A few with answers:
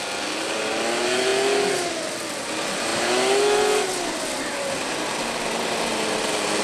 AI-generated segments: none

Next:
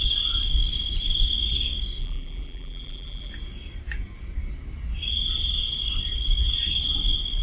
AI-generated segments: 2.0-3.3

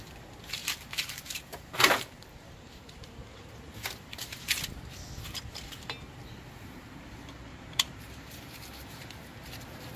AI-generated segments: 0.6-4.8; 7.5-9.1